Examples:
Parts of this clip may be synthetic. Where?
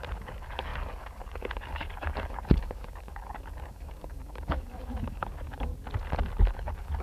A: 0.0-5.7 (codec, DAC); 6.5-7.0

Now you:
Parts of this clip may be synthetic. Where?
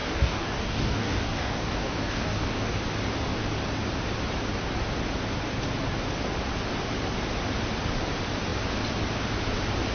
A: 0.0-2.8 (codec, DAC)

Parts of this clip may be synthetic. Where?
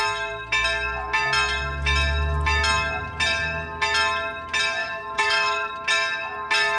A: 4.8-5.7 (codec, DAC)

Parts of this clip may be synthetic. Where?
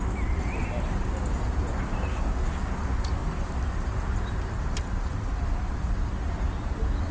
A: 2.1-2.7 (codec, DAC)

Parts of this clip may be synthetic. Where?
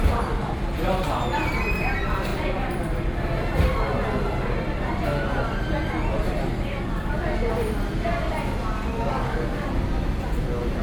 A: 6.5-7.5 (codec, DAC); 8.9-9.7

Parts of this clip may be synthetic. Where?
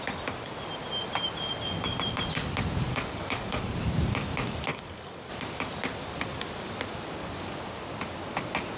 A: 2.9-3.6 (codec, DAC); 4.7-5.3